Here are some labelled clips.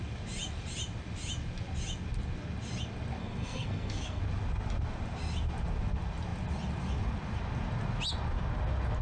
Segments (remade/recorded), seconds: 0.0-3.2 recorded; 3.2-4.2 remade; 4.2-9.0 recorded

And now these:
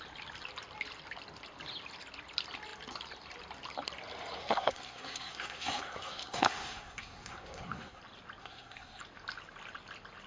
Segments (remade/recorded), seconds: 0.0-4.4 recorded; 4.4-8.0 remade; 8.0-8.4 recorded; 8.4-9.0 remade; 9.0-10.3 recorded

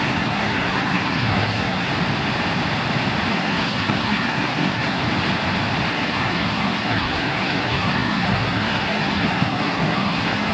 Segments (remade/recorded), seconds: 0.0-1.9 remade; 1.9-3.3 recorded; 3.3-5.0 remade; 5.0-5.9 recorded; 5.9-10.5 remade

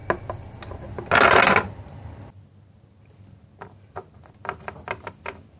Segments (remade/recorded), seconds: 0.0-5.6 recorded

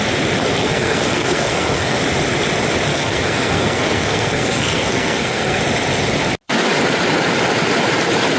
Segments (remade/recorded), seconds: 0.0-0.6 recorded; 0.6-2.0 remade; 2.0-2.9 recorded; 2.9-5.6 remade; 5.6-8.4 recorded

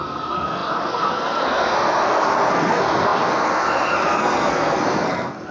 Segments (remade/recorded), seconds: 0.0-5.5 remade